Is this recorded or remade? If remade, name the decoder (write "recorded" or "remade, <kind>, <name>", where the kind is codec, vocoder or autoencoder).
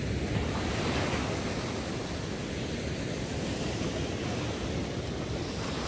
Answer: recorded